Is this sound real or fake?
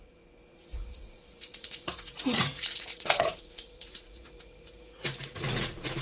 fake